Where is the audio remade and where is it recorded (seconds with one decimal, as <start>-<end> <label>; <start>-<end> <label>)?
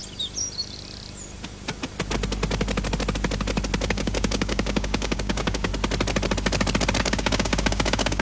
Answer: 0.0-3.9 recorded; 3.9-5.7 remade; 5.7-7.0 recorded; 7.0-8.2 remade